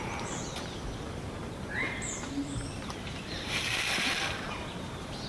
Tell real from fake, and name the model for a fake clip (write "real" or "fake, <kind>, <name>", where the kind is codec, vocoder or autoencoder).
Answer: fake, vocoder, BigVGAN v2